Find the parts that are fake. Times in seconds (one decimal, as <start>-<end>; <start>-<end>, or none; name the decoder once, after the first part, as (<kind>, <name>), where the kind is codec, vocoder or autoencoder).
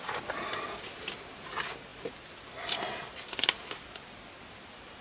none